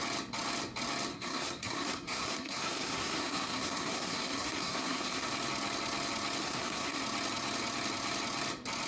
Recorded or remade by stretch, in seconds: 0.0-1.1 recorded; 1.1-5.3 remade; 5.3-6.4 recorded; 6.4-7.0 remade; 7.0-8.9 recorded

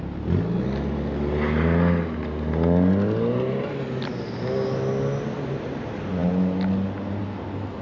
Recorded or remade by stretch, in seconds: 0.0-7.8 recorded

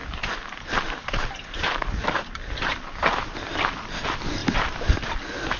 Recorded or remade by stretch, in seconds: 0.0-3.4 remade; 3.4-4.4 recorded; 4.4-5.1 remade; 5.1-5.6 recorded

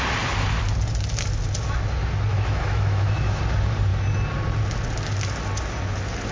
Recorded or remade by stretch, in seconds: 0.0-2.3 recorded; 2.3-3.4 remade; 3.4-6.3 recorded

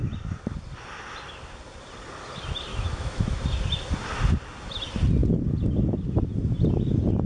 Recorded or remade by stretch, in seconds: 0.0-2.7 recorded; 2.7-3.4 remade; 3.4-7.3 recorded

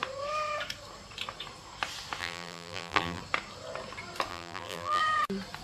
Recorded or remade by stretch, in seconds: 0.0-2.2 recorded; 2.2-3.2 remade; 3.2-4.3 recorded; 4.3-5.0 remade; 5.0-5.6 recorded